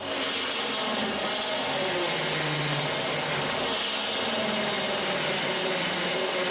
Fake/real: real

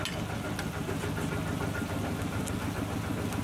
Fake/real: real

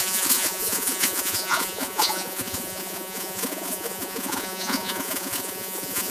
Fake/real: fake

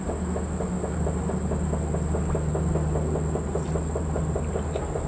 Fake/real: real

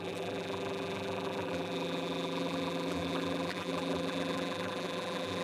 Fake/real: fake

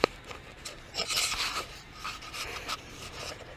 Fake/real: fake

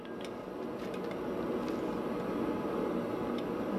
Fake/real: real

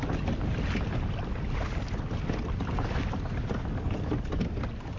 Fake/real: real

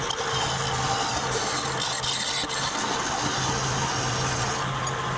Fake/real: real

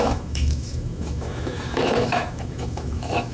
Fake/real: fake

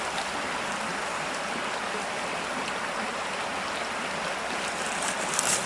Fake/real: real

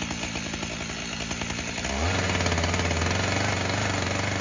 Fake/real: real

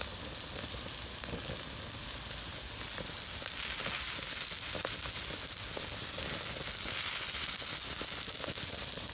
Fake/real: real